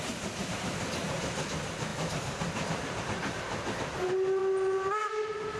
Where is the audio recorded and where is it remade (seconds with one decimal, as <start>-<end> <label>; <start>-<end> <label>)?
0.0-1.9 recorded; 1.9-3.0 remade; 3.0-5.6 recorded